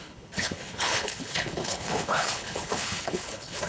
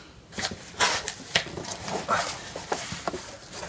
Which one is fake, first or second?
first